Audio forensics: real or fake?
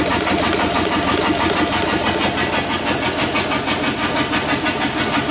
real